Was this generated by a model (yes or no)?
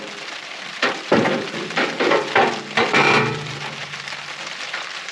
yes